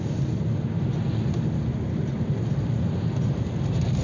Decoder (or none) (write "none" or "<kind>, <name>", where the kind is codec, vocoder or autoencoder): none